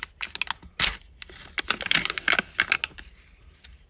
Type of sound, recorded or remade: recorded